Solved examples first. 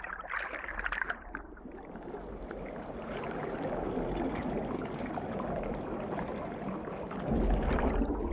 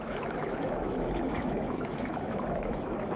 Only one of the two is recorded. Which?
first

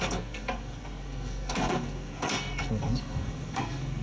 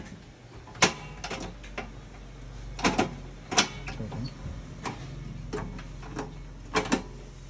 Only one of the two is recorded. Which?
second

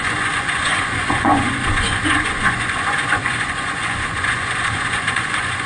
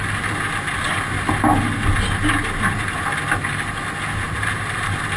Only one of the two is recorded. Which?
second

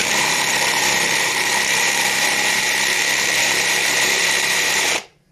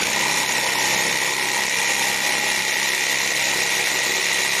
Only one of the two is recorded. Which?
second